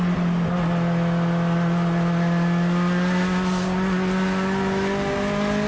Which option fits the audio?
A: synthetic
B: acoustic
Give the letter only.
B